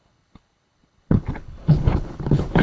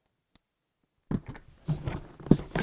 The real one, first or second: second